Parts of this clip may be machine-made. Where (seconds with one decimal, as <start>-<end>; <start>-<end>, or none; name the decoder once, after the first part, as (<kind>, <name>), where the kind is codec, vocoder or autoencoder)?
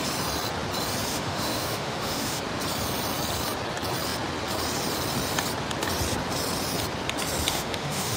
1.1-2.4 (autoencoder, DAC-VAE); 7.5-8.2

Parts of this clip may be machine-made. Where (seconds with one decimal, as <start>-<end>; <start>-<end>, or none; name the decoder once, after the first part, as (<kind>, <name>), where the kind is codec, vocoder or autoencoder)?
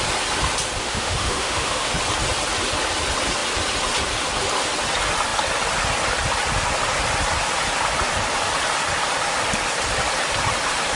0.8-1.9 (autoencoder, DAC-VAE)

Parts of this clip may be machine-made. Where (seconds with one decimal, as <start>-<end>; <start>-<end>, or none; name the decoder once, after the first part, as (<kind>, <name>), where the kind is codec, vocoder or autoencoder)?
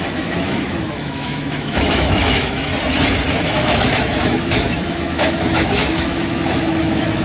0.0-2.7 (autoencoder, DAC-VAE); 3.3-7.2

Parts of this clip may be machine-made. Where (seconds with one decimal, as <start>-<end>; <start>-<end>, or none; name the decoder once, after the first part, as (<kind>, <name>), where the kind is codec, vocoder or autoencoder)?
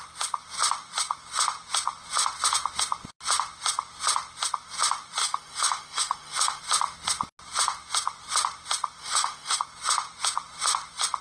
5.2-6.6 (autoencoder, DAC-VAE); 9.0-9.6